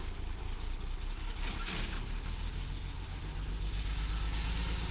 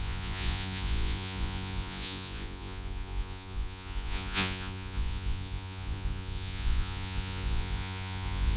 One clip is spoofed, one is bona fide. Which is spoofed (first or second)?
second